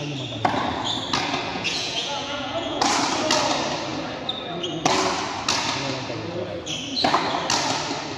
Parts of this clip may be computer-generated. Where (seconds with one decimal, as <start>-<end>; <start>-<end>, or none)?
1.5-2.9